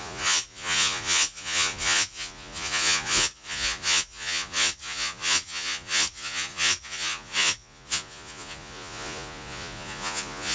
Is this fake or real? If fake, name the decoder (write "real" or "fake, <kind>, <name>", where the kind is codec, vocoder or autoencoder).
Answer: fake, vocoder, Vocos